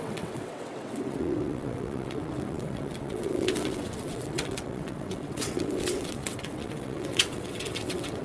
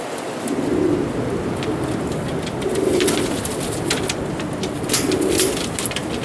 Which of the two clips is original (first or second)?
second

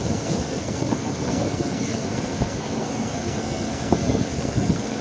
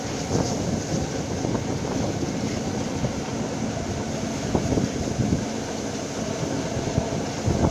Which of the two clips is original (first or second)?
second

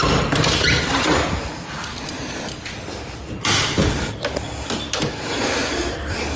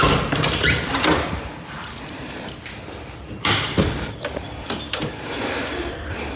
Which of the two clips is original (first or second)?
first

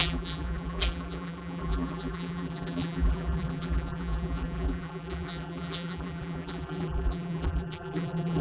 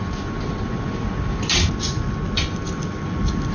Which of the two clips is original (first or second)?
second